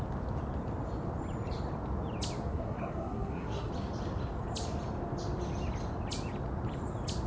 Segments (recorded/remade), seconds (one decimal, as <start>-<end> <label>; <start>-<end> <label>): 0.0-2.5 recorded; 2.5-3.7 remade; 3.7-7.3 recorded